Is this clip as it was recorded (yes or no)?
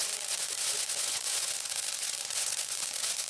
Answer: no